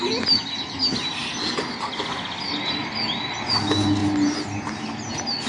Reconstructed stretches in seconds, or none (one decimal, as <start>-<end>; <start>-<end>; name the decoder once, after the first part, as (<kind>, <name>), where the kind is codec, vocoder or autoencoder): none